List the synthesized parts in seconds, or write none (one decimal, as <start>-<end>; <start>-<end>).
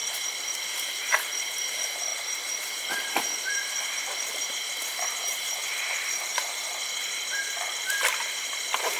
1.0-9.0